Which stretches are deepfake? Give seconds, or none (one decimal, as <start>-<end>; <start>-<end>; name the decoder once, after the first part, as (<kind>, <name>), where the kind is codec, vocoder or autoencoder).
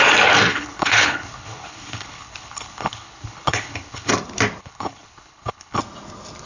0.5-4.1 (codec, HILCodec); 4.6-5.8